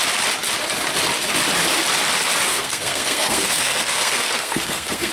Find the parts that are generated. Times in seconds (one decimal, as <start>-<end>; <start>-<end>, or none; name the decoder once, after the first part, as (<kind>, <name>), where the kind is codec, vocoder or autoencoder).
2.5-5.1 (codec, SNAC)